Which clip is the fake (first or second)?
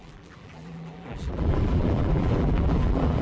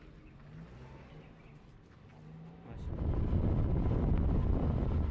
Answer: first